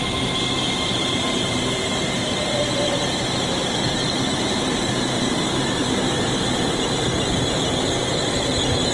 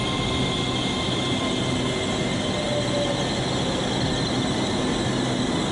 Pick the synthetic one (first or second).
first